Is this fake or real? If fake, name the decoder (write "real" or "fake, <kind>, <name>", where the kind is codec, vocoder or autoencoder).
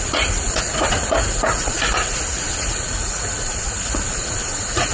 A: fake, vocoder, Vocos